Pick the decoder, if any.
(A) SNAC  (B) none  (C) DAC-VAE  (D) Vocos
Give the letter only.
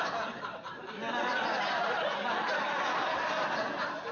B